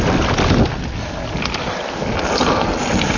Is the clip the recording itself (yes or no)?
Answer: yes